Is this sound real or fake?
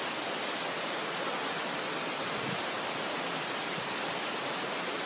real